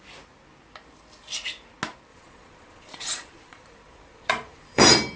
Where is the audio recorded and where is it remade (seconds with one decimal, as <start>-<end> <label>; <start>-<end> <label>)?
0.0-2.1 recorded; 2.1-4.8 remade; 4.8-5.2 recorded

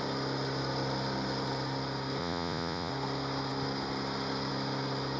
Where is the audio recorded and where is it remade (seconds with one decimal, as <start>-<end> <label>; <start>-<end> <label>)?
0.0-2.2 recorded; 2.2-2.9 remade; 2.9-5.2 recorded